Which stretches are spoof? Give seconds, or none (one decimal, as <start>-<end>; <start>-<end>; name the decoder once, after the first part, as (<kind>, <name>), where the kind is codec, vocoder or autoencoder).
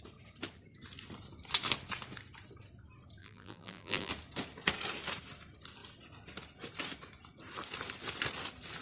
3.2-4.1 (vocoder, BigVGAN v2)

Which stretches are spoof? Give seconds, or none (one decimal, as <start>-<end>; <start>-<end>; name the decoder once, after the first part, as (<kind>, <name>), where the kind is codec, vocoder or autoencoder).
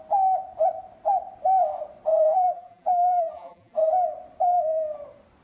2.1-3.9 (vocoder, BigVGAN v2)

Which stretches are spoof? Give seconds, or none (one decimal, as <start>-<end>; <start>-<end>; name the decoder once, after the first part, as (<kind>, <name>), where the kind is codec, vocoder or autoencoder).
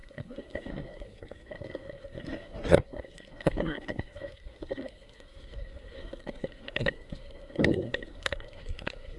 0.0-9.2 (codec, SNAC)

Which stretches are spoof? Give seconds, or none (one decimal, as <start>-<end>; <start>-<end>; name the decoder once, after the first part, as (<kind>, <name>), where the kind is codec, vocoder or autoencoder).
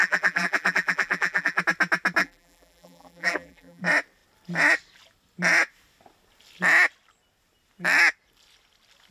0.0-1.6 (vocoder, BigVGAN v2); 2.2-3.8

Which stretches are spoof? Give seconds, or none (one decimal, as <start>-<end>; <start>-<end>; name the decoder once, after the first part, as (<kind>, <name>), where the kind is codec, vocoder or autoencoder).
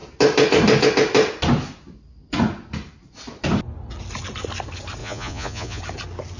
5.0-5.8 (vocoder, Vocos)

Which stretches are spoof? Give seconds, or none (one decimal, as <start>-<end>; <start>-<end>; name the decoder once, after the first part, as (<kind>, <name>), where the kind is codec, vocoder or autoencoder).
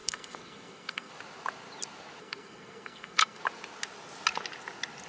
0.0-1.1 (codec, SNAC); 2.2-3.4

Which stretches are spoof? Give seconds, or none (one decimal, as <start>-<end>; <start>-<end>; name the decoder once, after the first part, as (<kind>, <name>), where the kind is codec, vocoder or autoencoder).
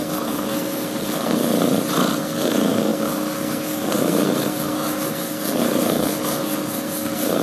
0.0-1.5 (codec, SNAC); 2.2-7.4